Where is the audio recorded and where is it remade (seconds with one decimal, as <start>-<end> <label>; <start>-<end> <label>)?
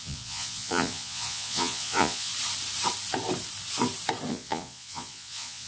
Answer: 0.0-2.3 remade; 2.3-4.3 recorded; 4.3-5.7 remade